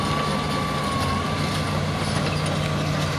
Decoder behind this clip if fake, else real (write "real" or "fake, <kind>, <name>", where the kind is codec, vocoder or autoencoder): real